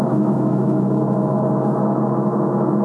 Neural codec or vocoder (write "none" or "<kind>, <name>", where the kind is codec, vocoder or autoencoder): autoencoder, DAC-VAE